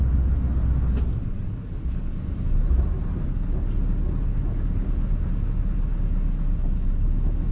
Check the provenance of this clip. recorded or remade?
recorded